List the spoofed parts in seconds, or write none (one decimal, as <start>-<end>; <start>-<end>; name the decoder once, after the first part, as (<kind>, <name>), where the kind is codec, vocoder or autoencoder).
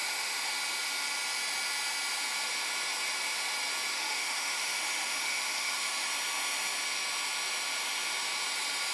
0.0-0.5 (autoencoder, DAC-VAE); 3.9-6.1